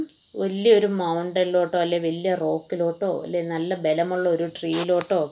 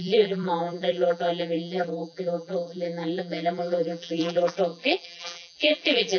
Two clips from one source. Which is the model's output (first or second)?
second